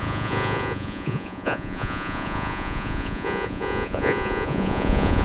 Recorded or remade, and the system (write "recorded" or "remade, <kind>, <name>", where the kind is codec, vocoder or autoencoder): remade, vocoder, Vocos